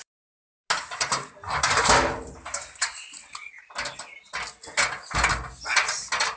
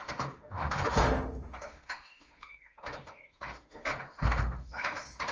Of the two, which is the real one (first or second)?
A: first